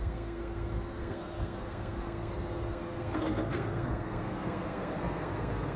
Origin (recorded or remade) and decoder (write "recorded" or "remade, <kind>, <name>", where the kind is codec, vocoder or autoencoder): remade, codec, SNAC